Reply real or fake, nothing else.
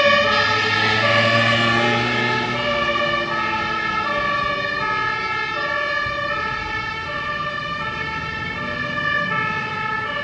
real